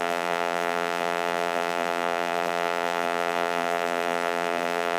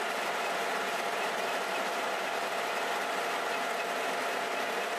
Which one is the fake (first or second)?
first